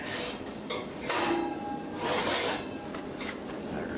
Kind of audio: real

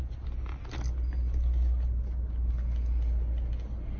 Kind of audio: real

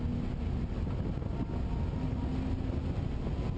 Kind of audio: real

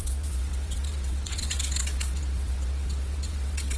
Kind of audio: fake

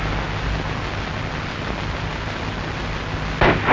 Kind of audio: real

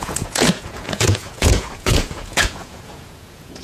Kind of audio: fake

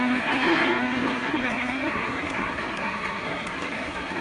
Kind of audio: fake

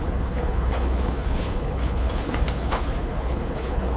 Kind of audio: fake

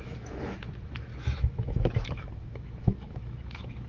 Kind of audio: fake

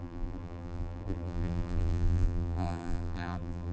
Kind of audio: fake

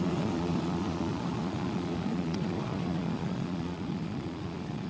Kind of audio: fake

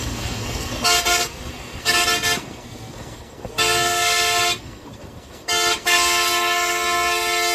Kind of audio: fake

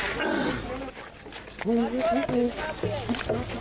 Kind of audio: real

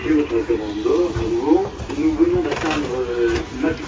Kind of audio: real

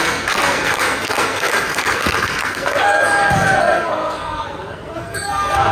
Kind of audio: fake